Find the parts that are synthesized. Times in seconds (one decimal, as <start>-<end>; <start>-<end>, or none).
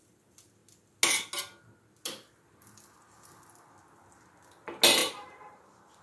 5.0-6.0